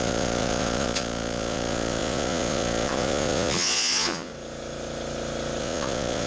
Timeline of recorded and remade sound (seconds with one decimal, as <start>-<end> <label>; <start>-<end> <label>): 0.0-4.3 remade; 4.3-5.6 recorded; 5.6-6.3 remade